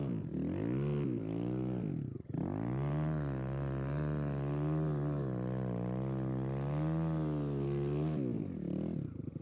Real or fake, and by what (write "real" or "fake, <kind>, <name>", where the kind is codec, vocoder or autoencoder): real